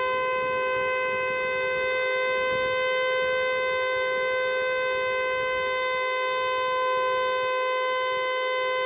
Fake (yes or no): no